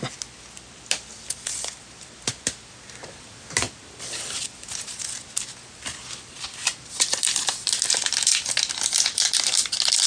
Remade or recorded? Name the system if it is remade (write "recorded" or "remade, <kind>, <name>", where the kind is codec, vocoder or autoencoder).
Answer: recorded